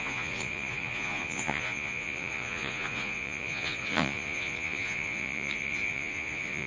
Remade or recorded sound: remade